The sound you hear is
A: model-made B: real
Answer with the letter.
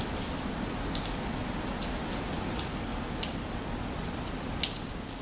B